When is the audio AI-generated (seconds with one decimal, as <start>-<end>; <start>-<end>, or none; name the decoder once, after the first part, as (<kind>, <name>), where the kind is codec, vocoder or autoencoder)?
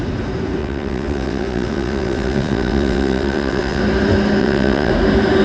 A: 0.6-3.8 (vocoder, WaveNeXt); 4.4-4.9